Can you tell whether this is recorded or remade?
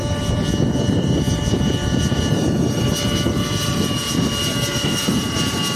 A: recorded